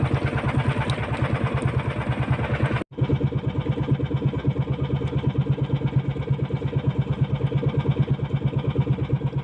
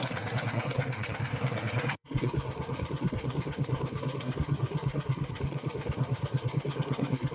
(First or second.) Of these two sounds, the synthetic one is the second